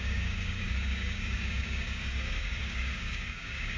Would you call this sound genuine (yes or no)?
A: no